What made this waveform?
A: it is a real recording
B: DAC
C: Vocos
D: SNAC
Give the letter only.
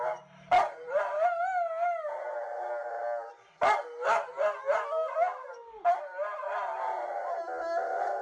A